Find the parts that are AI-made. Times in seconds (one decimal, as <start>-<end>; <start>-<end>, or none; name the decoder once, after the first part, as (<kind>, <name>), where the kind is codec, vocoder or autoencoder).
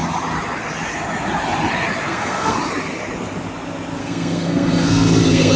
2.1-2.6 (codec, SNAC); 4.0-5.6